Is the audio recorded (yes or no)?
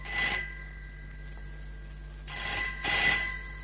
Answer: yes